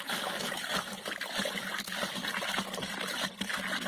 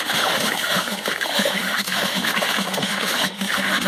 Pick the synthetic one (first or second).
second